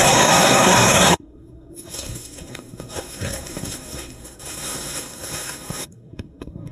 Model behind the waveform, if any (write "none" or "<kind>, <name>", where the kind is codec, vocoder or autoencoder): codec, SNAC